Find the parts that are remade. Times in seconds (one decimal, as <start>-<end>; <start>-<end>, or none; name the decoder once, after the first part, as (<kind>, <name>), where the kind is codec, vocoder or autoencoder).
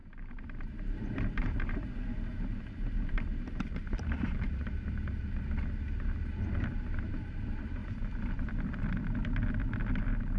0.0-7.8 (vocoder, BigVGAN v2); 10.0-10.4